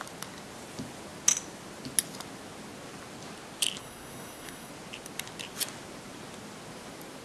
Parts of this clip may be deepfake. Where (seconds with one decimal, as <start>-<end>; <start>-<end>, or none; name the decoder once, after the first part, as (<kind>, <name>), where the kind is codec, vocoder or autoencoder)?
3.8-4.7 (codec, SNAC)